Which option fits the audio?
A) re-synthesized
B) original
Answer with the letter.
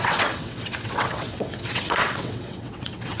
A